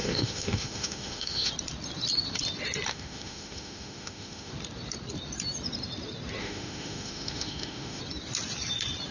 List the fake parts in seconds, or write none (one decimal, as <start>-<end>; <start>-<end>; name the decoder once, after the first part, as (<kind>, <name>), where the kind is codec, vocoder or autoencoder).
0.0-1.5 (autoencoder, DAC-VAE); 2.9-4.5; 6.4-8.0